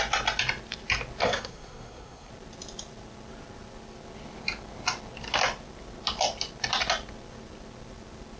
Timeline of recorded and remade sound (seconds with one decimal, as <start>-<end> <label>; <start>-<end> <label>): 0.0-1.2 recorded; 1.2-2.3 remade; 2.3-8.4 recorded